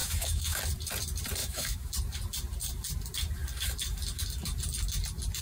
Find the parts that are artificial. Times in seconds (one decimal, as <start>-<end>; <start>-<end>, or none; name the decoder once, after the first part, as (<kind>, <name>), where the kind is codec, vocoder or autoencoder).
0.0-0.6 (autoencoder, DAC-VAE); 1.4-1.9